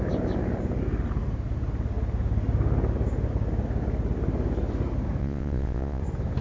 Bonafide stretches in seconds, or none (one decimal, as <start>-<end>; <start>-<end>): 0.0-5.2; 6.0-6.4